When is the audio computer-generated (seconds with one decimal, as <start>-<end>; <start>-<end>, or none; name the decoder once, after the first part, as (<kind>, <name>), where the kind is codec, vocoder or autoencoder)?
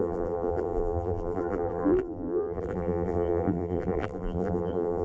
0.0-5.0 (vocoder, BigVGAN v2)